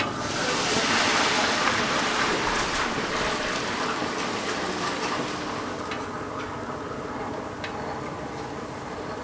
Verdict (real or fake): real